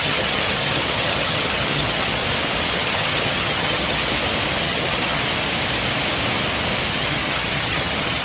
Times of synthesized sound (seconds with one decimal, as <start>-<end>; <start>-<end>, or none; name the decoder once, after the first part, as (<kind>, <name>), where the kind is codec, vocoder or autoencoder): 0.0-2.2 (vocoder, HiFi-GAN); 2.7-4.0; 4.6-5.2; 6.9-8.2